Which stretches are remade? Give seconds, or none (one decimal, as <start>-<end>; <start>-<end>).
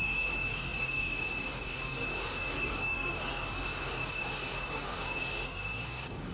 0.0-6.3